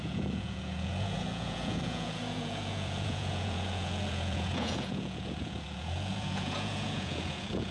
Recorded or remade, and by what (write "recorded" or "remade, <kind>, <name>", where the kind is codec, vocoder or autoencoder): remade, vocoder, Vocos